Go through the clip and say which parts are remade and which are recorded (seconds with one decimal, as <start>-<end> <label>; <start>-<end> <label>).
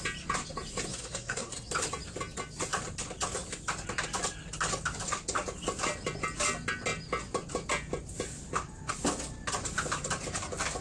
0.0-0.9 recorded; 0.9-1.7 remade; 1.7-10.8 recorded